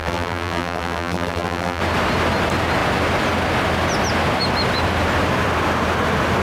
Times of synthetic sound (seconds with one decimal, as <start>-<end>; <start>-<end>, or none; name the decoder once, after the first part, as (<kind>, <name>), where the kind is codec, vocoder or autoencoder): 0.0-1.8 (vocoder, BigVGAN v2)